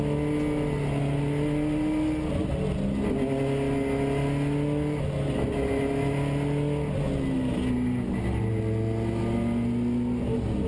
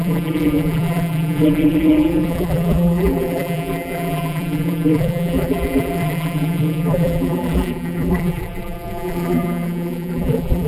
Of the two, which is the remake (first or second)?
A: second